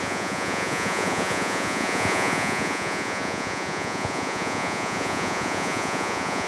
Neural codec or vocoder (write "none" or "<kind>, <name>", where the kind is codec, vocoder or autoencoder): vocoder, Vocos